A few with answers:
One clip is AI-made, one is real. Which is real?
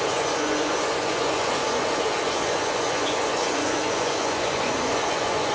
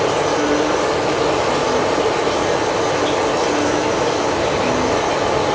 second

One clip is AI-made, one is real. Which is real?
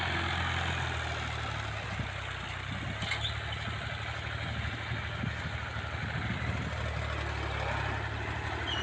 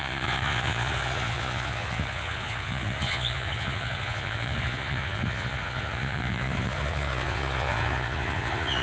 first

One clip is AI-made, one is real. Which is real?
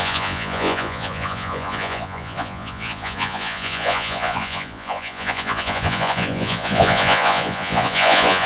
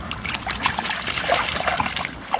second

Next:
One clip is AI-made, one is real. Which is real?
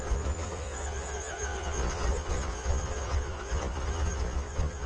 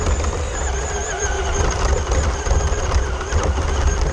second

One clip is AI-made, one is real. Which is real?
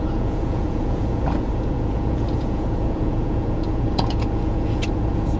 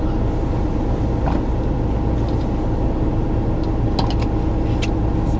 second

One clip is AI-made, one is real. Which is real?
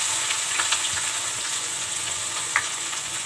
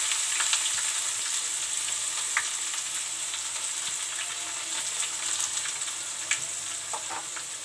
second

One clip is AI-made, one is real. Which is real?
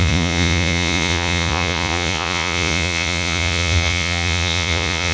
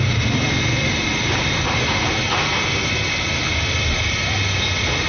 second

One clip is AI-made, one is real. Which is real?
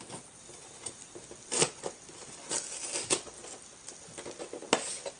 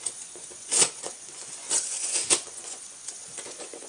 first